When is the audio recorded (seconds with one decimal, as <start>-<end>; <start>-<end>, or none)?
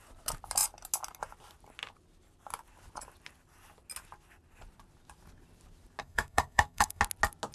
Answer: 0.0-6.0; 7.0-7.5